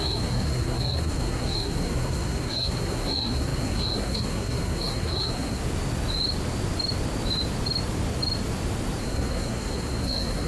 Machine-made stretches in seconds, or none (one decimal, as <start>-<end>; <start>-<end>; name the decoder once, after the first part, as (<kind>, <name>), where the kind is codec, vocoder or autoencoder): 0.0-5.6 (codec, SNAC); 9.0-10.5